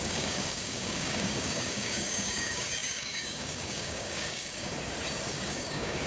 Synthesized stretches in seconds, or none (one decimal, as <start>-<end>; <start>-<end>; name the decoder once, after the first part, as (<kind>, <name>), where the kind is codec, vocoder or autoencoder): 0.0-4.7 (codec, DAC); 5.3-6.1